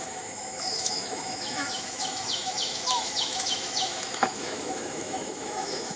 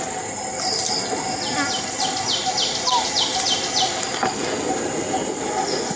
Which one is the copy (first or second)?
first